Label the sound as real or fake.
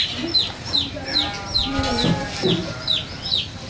real